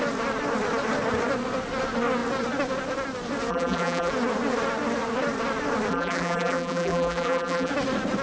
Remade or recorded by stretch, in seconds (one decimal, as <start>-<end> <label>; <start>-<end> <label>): 0.0-3.5 recorded; 3.5-4.1 remade; 4.1-5.9 recorded; 5.9-7.7 remade; 7.7-8.2 recorded